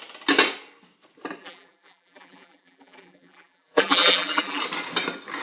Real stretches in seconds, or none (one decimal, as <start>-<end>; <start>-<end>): 0.0-1.4; 4.6-5.4